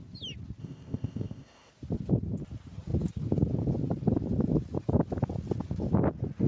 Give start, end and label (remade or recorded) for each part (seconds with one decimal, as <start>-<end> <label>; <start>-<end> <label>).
0.0-0.6 recorded; 0.6-1.7 remade; 1.7-6.5 recorded